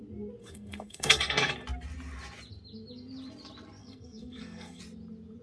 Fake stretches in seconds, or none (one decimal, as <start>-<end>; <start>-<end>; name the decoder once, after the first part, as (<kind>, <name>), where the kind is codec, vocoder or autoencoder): 0.4-1.5 (codec, SNAC); 3.8-4.8